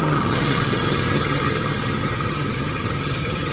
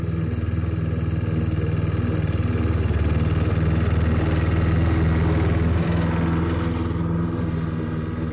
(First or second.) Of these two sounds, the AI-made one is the first